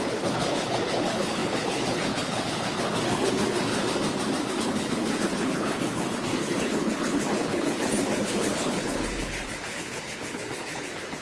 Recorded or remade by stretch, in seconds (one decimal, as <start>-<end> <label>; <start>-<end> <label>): 0.0-3.7 remade; 3.7-4.5 recorded; 4.5-11.2 remade

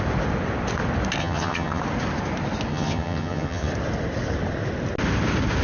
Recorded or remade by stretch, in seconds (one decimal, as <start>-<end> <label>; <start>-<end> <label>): 0.0-1.2 recorded; 1.2-1.8 remade; 1.8-2.7 recorded; 2.7-3.7 remade; 3.7-5.6 recorded

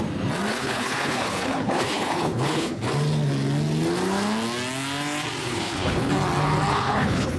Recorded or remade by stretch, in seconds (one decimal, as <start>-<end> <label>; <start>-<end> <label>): 0.0-0.5 recorded; 0.5-2.8 remade; 2.8-5.4 recorded; 5.4-6.1 remade; 6.1-6.7 recorded; 6.7-7.4 remade

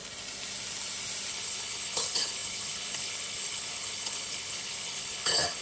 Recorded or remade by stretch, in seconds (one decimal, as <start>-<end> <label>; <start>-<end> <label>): 0.0-1.3 recorded; 1.3-5.6 remade